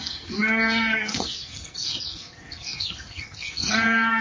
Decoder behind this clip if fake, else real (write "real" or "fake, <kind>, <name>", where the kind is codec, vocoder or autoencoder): fake, codec, SNAC